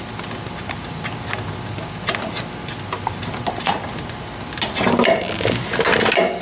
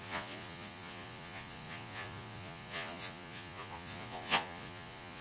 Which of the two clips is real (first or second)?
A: first